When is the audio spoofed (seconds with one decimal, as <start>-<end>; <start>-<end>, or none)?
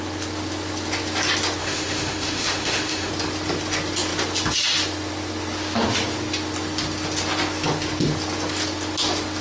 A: 1.6-3.1